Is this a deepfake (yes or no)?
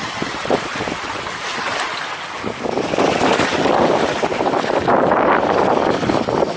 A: no